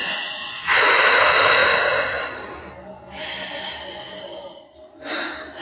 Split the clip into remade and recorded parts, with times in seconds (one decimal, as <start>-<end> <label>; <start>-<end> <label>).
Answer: 0.0-1.0 remade; 1.0-5.6 recorded